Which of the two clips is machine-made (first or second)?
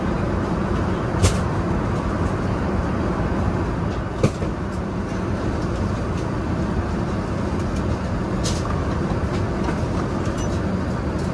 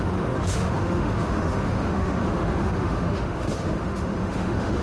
second